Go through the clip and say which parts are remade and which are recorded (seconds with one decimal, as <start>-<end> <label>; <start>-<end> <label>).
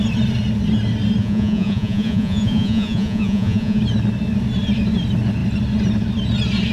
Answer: 0.0-1.2 recorded; 1.2-3.8 remade; 3.8-6.7 recorded